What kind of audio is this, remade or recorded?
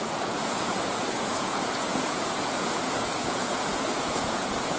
remade